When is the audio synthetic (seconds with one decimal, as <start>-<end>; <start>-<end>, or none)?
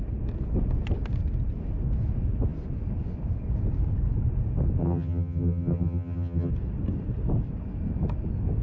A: 4.8-6.5